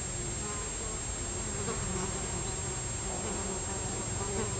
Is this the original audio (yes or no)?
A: yes